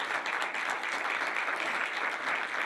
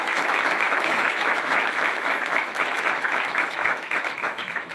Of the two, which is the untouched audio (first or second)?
first